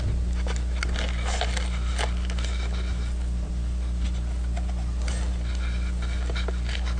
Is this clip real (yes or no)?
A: yes